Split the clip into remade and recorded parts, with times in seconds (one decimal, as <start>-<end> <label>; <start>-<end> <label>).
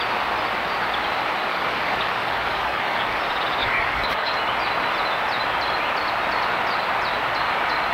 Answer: 0.0-1.5 recorded; 1.5-3.2 remade; 3.2-3.6 recorded; 3.6-4.3 remade; 4.3-7.9 recorded